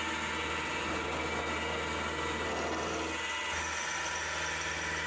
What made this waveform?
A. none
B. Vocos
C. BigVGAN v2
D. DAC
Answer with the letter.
A